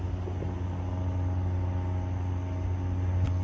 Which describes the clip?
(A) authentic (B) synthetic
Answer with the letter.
A